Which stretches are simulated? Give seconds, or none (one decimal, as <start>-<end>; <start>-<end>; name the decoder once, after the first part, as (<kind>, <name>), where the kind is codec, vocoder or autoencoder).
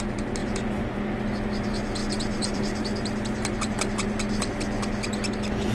0.4-1.0 (vocoder, BigVGAN v2); 2.0-4.5